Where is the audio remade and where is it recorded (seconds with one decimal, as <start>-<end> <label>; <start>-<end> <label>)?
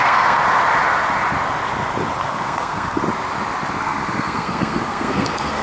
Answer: 0.0-0.4 remade; 0.4-2.2 recorded; 2.2-3.0 remade; 3.0-3.8 recorded; 3.8-5.6 remade